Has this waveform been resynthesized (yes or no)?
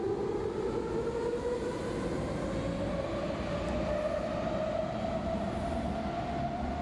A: no